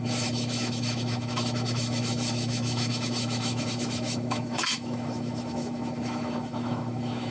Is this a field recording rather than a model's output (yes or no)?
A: no